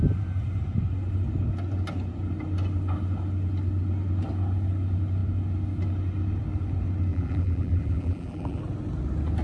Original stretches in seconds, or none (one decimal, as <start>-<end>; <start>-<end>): 0.0-7.1; 8.6-9.4